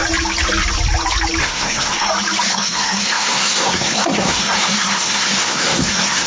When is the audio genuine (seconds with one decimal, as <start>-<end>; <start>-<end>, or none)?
0.0-1.4; 2.1-2.5